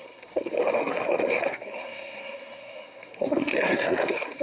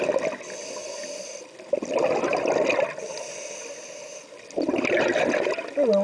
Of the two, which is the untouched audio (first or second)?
second